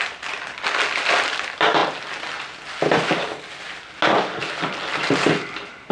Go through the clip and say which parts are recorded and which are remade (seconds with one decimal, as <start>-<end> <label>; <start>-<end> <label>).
0.0-5.9 recorded